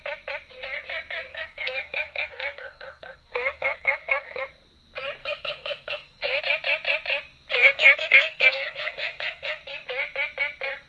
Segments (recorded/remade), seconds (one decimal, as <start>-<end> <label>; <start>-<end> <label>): 0.0-1.3 recorded; 1.3-4.4 remade; 4.4-5.2 recorded; 5.2-6.4 remade; 6.4-7.6 recorded; 7.6-9.6 remade; 9.6-10.9 recorded